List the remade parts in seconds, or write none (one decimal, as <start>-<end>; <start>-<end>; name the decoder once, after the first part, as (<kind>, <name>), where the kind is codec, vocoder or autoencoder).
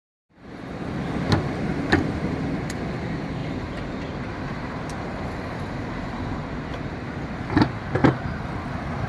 1.7-2.4 (vocoder, BigVGAN v2); 3.4-6.1